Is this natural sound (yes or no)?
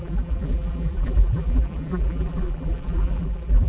no